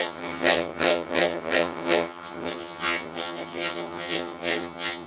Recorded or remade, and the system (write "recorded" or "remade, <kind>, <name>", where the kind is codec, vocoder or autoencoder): remade, vocoder, HiFi-GAN